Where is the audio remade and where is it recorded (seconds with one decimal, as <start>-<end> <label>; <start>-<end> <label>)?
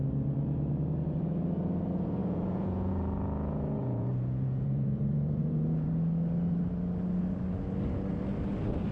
0.0-2.2 recorded; 2.2-2.9 remade; 2.9-3.8 recorded; 3.8-5.9 remade; 5.9-8.9 recorded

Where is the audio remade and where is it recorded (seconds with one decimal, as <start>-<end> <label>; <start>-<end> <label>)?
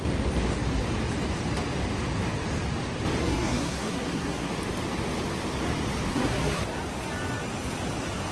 0.0-3.2 recorded; 3.2-4.5 remade; 4.5-6.1 recorded; 6.1-6.6 remade; 6.6-8.3 recorded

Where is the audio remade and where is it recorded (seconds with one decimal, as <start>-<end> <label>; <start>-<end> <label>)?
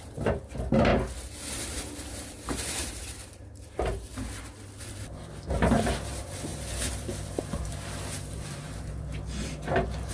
0.0-0.9 remade; 0.9-1.5 recorded; 1.5-4.1 remade; 4.1-4.8 recorded; 4.8-10.1 remade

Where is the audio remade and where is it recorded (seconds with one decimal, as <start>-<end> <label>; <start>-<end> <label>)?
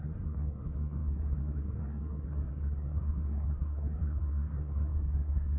0.0-5.6 remade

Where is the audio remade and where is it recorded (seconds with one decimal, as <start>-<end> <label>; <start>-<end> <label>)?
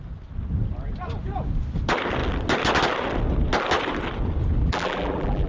0.0-4.6 recorded; 4.6-5.5 remade